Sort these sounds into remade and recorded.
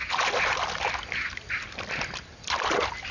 recorded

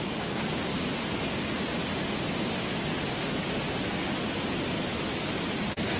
recorded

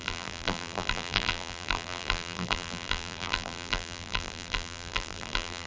remade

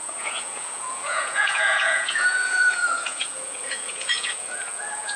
remade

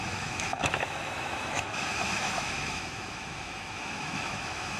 remade